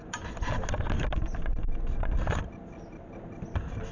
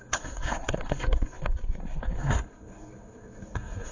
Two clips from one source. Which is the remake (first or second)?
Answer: second